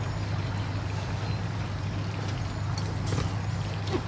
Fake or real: real